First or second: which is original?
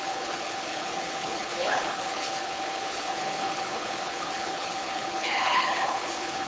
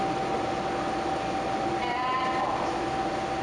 second